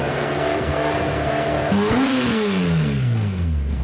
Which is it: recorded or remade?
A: remade